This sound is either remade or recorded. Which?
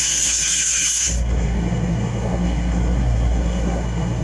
remade